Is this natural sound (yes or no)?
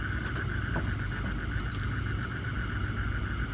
yes